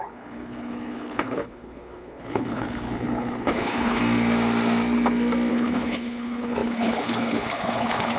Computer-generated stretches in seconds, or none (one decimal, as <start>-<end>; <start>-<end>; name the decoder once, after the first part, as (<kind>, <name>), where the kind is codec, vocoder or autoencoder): 0.0-4.0 (codec, HILCodec); 5.5-8.2